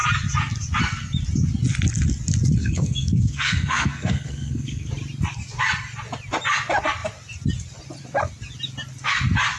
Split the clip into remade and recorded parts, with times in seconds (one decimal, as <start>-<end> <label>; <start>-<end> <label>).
0.0-2.6 recorded; 2.6-4.9 remade; 4.9-9.6 recorded